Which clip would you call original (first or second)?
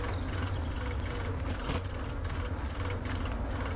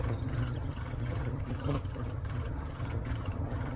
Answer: first